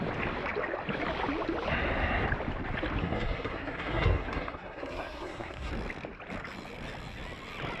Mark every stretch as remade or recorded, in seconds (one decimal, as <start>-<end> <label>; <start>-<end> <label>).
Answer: 0.0-3.0 recorded; 3.0-5.7 remade; 5.7-7.8 recorded